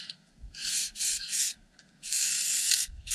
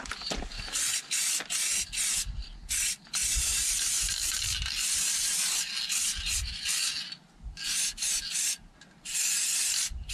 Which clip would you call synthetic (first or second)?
first